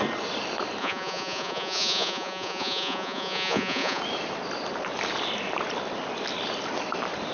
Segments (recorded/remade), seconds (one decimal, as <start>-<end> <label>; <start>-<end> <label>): 0.0-0.8 recorded; 0.8-4.0 remade; 4.0-7.3 recorded